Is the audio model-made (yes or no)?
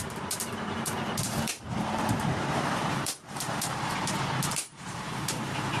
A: yes